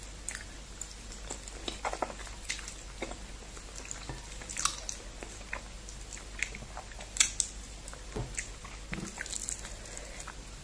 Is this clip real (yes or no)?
yes